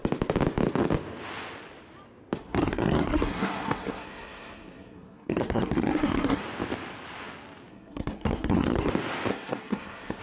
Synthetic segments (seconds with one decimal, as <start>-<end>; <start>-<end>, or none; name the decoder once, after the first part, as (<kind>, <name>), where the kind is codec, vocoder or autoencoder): 2.4-6.4 (codec, SNAC); 7.7-8.9; 9.3-10.2